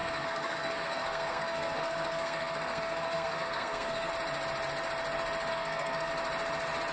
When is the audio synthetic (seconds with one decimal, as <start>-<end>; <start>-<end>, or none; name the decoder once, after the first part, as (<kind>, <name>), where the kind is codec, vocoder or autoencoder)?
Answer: 0.0-4.1 (codec, SNAC); 5.5-6.1